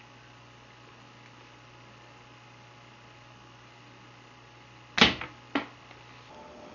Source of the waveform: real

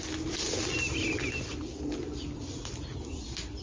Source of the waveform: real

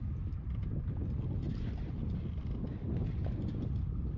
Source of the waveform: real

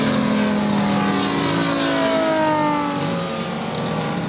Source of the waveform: real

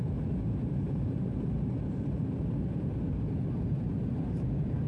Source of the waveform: fake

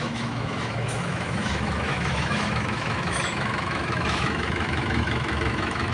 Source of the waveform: fake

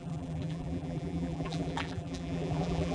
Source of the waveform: fake